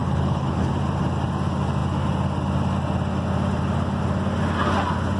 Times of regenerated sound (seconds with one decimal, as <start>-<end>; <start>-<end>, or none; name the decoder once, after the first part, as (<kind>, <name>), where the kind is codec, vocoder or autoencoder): 0.0-0.7 (codec, HILCodec)